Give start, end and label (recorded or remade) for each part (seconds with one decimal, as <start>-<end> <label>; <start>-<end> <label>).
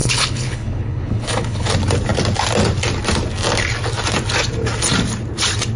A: 0.0-1.7 remade; 1.7-5.8 recorded